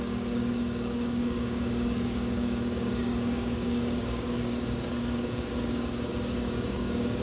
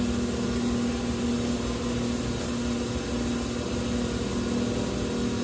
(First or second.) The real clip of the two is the second